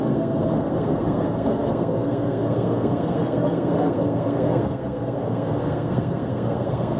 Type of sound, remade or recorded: remade